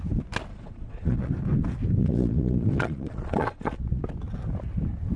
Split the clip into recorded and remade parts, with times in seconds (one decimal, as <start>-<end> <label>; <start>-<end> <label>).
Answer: 0.0-0.5 recorded; 0.5-1.3 remade; 1.3-2.0 recorded; 2.0-4.0 remade; 4.0-5.2 recorded